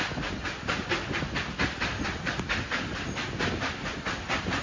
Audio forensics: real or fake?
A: real